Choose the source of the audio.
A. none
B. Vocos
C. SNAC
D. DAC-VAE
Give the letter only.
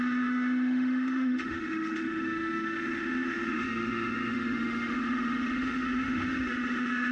D